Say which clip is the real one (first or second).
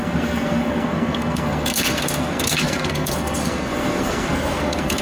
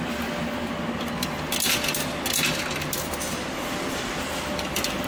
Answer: second